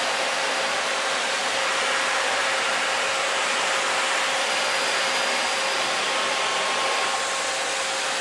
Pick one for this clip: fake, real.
real